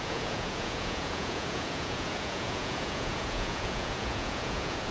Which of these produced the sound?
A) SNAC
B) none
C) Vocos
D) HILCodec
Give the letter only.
C